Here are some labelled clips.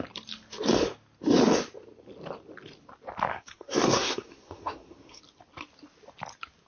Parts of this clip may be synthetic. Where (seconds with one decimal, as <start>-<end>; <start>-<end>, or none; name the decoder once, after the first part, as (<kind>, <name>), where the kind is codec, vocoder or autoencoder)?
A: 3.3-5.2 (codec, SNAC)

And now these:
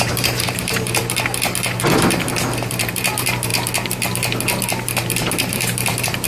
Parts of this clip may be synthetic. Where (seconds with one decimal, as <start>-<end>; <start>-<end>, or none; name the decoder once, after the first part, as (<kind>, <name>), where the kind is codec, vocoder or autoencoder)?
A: 0.0-1.0 (vocoder, BigVGAN v2); 2.7-3.5; 5.3-6.3

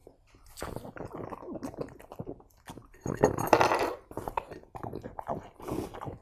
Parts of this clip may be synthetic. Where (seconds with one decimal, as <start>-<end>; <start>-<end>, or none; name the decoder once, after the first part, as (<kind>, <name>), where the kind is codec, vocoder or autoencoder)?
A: none